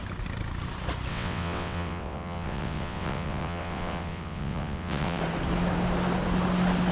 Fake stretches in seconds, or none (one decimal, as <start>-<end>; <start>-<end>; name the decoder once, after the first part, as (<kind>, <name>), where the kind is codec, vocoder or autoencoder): 1.1-5.2 (vocoder, WaveNeXt)